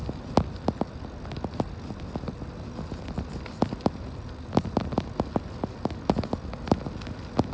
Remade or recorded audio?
recorded